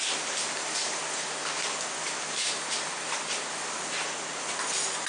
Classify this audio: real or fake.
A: real